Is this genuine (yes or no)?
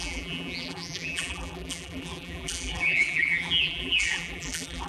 no